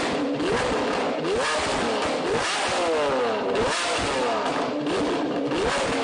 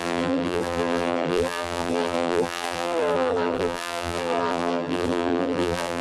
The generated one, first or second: second